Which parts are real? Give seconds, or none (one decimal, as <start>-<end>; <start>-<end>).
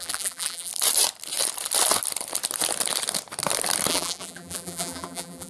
0.7-3.9